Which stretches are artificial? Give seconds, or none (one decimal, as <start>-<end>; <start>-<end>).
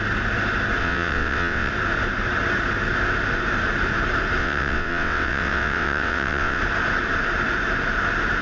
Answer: 0.8-1.7; 4.4-6.6